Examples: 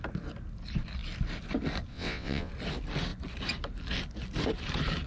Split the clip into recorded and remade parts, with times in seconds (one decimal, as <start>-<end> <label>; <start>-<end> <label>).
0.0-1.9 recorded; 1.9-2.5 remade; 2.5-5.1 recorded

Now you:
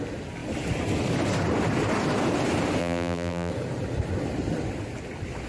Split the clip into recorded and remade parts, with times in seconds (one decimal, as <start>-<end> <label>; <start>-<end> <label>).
0.0-2.8 recorded; 2.8-3.5 remade; 3.5-5.5 recorded

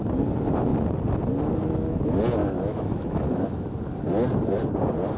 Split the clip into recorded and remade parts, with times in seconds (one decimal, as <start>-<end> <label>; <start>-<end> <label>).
0.0-2.4 recorded; 2.4-3.7 remade; 3.7-5.2 recorded

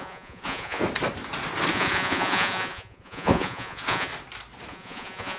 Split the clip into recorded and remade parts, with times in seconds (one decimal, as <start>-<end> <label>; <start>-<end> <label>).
0.0-0.8 remade; 0.8-1.7 recorded; 1.7-4.1 remade; 4.1-4.7 recorded; 4.7-5.4 remade

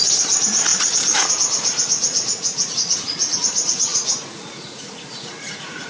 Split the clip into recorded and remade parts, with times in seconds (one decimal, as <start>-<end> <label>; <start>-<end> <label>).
0.0-5.9 remade